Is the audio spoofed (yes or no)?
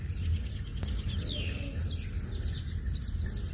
no